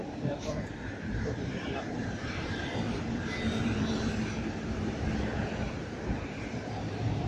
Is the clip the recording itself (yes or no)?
no